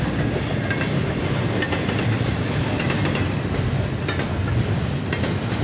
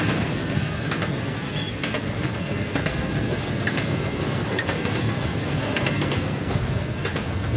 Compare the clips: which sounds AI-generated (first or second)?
second